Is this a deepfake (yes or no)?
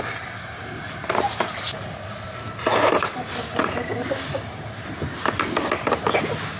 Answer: no